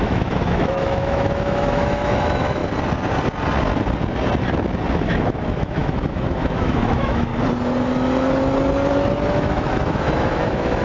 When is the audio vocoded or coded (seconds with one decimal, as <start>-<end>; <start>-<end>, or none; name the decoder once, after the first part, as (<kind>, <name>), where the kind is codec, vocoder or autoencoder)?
0.0-2.6 (autoencoder, DAC-VAE); 4.9-7.3; 9.3-10.8